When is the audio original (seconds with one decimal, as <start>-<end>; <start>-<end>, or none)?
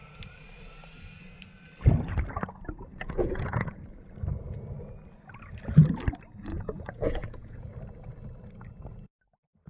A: 0.0-2.9; 3.8-6.5; 7.7-9.7